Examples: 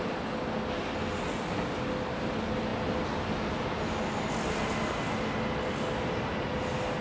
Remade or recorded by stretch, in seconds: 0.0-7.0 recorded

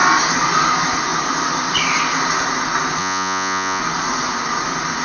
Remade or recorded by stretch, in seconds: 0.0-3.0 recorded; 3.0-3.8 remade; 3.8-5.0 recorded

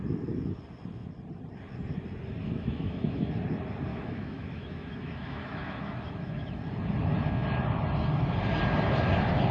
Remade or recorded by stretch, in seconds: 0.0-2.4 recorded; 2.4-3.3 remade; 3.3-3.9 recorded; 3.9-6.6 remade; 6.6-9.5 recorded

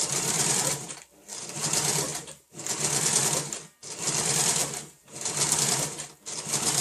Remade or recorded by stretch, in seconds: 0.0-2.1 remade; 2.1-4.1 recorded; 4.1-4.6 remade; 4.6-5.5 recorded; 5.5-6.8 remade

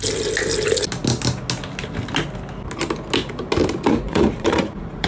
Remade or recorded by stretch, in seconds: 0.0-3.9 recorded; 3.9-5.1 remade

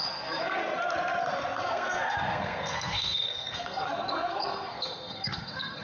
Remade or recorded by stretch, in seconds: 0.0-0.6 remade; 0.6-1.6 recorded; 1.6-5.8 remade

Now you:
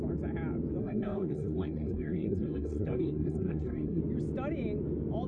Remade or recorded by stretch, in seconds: 0.0-0.8 recorded; 0.8-4.0 remade; 4.0-5.3 recorded